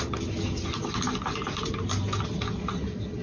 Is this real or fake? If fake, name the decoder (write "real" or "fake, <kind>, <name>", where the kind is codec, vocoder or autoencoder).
real